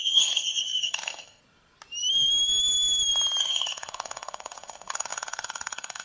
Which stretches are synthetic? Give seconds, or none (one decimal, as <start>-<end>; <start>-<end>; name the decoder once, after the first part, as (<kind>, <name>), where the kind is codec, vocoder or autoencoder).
0.0-1.4 (codec, SNAC); 3.4-6.0

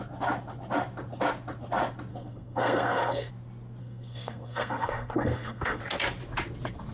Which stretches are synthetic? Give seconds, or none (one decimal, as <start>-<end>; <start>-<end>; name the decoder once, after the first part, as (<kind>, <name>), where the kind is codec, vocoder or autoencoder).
2.1-3.3 (codec, SNAC); 3.8-5.8